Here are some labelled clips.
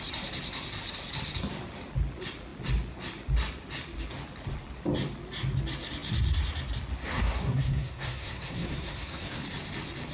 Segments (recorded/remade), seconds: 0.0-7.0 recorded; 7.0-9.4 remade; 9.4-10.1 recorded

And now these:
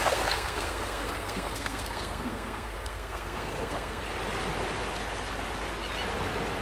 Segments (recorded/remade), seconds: 0.0-4.0 remade; 4.0-6.6 recorded

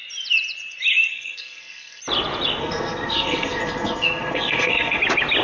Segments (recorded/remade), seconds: 0.0-1.1 recorded; 1.1-2.0 remade; 2.0-2.6 recorded; 2.6-5.0 remade; 5.0-5.4 recorded

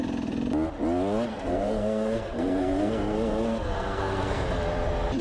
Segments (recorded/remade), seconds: 0.0-1.3 recorded; 1.3-4.4 remade; 4.4-5.2 recorded

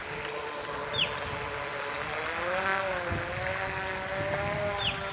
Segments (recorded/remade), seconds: 0.0-5.1 recorded

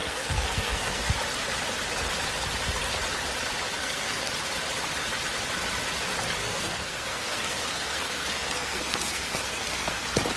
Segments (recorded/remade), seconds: 0.0-1.1 remade; 1.1-3.8 recorded; 3.8-4.3 remade; 4.3-6.4 recorded; 6.4-10.0 remade; 10.0-10.4 recorded

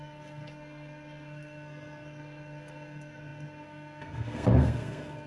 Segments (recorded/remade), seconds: 0.0-5.3 remade

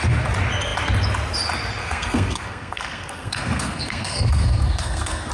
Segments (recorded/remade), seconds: 0.0-1.8 recorded; 1.8-5.3 remade